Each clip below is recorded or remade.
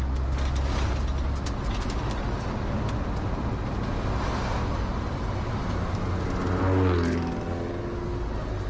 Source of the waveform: recorded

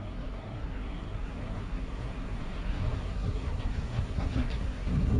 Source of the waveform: remade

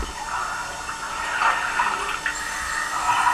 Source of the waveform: recorded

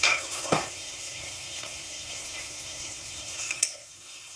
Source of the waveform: remade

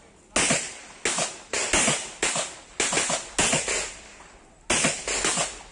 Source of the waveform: recorded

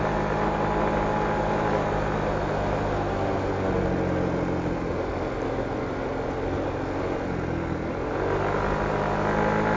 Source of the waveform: recorded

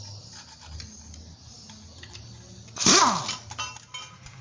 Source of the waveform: recorded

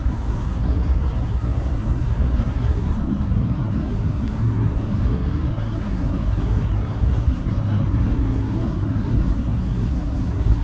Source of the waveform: remade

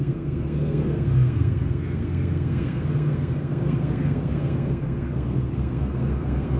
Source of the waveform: remade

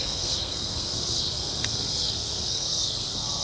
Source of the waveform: remade